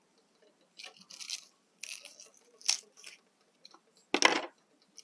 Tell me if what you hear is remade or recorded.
recorded